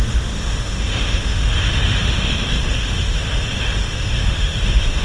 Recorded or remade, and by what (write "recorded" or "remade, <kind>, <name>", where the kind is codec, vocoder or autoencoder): remade, autoencoder, DAC-VAE